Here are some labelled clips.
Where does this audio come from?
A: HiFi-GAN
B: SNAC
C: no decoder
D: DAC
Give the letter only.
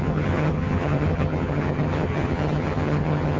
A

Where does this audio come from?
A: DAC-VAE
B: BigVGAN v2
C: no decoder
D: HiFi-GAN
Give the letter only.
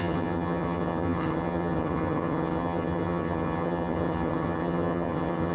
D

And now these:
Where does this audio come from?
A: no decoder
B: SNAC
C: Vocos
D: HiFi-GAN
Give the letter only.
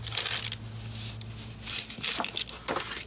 A